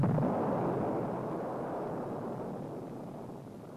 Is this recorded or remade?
recorded